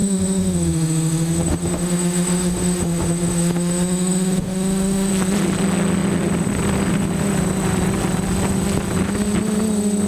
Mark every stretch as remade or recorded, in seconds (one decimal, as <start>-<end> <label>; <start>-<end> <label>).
0.0-5.1 remade; 5.1-10.1 recorded

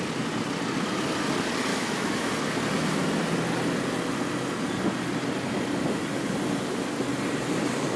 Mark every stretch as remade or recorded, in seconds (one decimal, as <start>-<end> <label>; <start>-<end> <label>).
0.0-1.7 recorded; 1.7-2.3 remade; 2.3-8.0 recorded

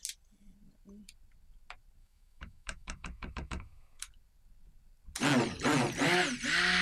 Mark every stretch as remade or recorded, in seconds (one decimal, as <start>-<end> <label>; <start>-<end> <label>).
0.0-2.0 recorded; 2.0-4.1 remade; 4.1-6.8 recorded

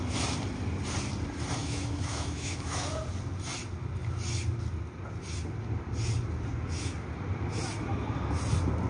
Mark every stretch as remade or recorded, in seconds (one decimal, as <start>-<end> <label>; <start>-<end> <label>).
0.0-1.6 recorded; 1.6-3.0 remade; 3.0-8.9 recorded

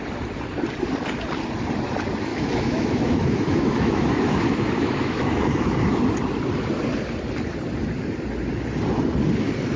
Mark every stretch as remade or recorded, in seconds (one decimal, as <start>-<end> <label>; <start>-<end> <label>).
0.0-2.3 recorded; 2.3-6.0 remade; 6.0-9.8 recorded

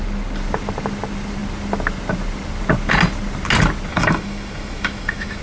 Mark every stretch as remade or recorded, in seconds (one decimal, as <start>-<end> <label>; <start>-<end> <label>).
0.0-3.9 recorded; 3.9-5.4 remade

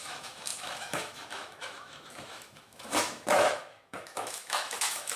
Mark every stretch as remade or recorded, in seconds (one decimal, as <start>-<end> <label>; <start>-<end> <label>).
0.0-5.2 remade